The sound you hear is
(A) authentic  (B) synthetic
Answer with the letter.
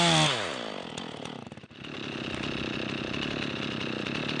A